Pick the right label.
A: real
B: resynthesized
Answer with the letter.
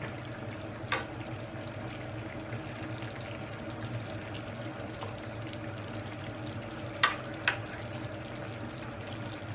A